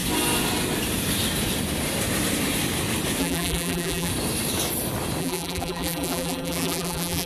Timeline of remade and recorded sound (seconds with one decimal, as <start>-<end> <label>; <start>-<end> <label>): 0.0-3.2 recorded; 3.2-4.1 remade; 4.1-5.2 recorded; 5.2-7.3 remade